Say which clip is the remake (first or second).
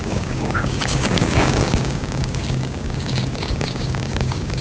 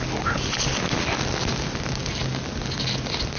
first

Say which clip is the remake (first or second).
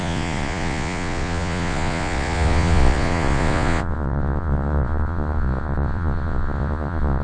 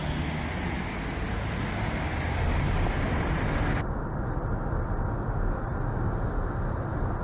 first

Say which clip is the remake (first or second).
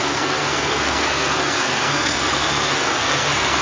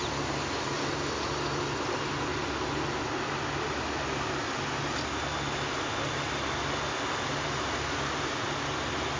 first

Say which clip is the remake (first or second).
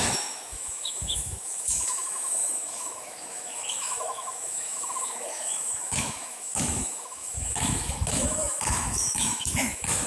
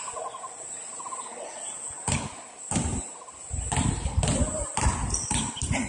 first